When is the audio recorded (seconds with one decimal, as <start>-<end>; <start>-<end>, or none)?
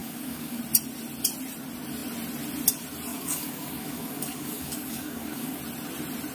0.6-3.1; 5.6-6.3